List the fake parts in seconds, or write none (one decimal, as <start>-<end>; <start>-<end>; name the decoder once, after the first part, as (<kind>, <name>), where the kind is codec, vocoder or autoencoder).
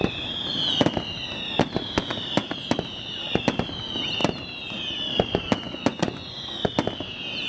5.9-6.7 (vocoder, Vocos)